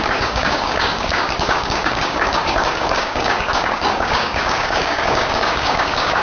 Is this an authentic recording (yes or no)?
no